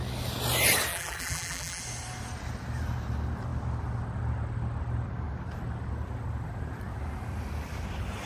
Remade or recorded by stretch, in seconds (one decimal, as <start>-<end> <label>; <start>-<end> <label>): 0.0-0.9 recorded; 0.9-1.8 remade; 1.8-8.3 recorded